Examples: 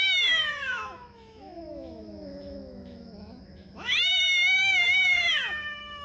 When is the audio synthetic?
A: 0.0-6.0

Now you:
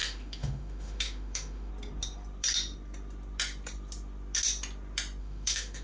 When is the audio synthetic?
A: 0.0-1.7; 5.2-5.8

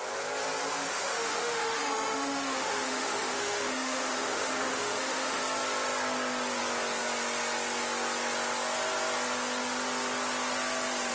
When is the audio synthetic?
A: 0.9-5.4

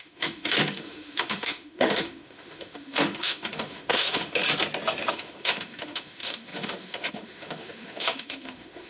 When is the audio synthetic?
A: 0.0-4.4; 5.1-8.9

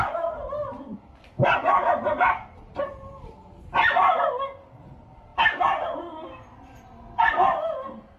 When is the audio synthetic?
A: none

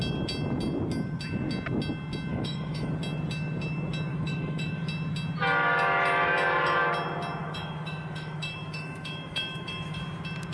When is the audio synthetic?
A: 2.3-2.9; 4.1-4.8; 7.4-10.0